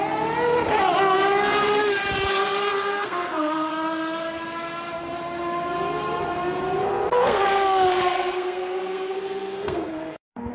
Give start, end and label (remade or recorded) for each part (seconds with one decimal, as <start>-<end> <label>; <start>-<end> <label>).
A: 0.0-2.9 recorded; 2.9-3.7 remade; 3.7-6.8 recorded; 6.8-10.5 remade